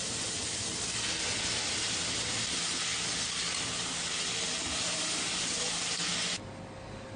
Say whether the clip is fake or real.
real